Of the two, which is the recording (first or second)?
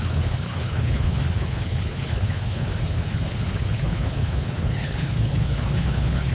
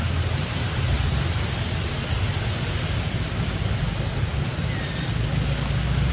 second